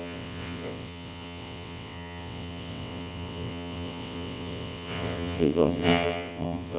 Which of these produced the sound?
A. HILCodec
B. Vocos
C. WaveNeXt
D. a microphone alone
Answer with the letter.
C